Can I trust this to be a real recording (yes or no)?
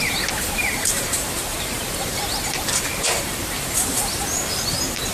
no